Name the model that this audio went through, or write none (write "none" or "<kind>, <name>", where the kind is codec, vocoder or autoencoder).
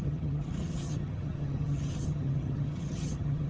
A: vocoder, HiFi-GAN